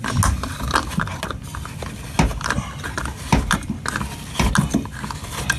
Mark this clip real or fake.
real